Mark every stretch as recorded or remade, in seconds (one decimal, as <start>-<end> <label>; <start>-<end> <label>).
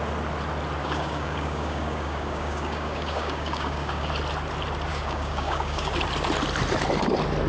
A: 0.0-0.8 recorded; 0.8-4.1 remade; 4.1-4.9 recorded; 4.9-5.9 remade; 5.9-7.5 recorded